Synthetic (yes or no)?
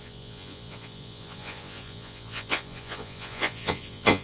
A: yes